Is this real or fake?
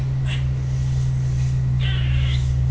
real